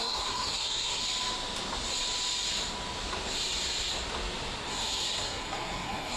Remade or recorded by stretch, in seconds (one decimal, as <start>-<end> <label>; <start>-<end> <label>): 0.0-1.0 remade; 1.0-4.7 recorded; 4.7-6.2 remade